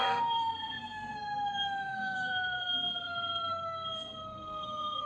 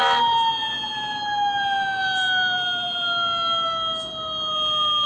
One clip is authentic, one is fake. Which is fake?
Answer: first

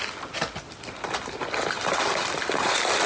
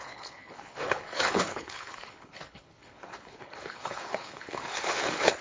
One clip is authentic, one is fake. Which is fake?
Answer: second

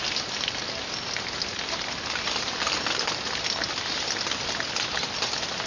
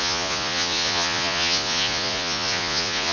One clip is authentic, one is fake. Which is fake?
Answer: second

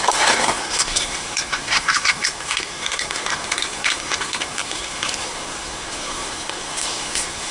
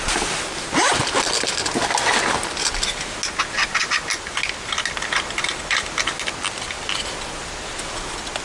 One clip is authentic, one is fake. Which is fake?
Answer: first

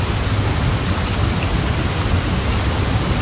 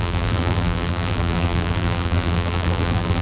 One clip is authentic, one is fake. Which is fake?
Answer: second